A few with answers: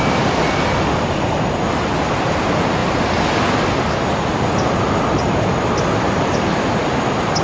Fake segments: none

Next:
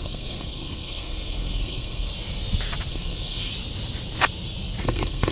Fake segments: 0.0-2.1 (codec, SNAC); 2.9-3.5; 4.8-5.3